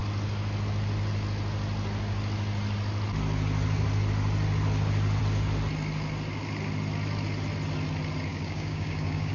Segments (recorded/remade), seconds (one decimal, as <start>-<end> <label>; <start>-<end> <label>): 0.0-8.3 recorded; 8.3-9.3 remade